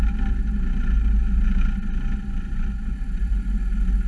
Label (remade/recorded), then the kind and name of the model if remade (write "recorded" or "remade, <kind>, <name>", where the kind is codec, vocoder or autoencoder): recorded